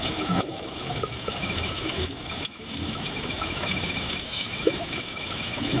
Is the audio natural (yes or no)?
no